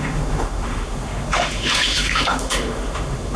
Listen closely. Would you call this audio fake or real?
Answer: fake